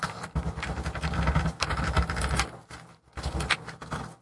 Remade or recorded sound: recorded